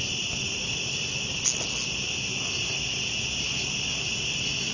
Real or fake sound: real